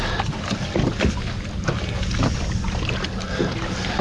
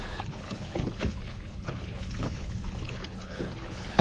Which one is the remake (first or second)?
second